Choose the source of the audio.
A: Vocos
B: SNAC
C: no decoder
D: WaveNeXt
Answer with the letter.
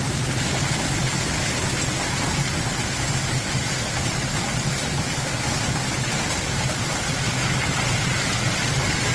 C